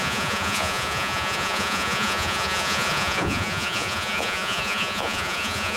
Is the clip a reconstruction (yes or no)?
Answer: yes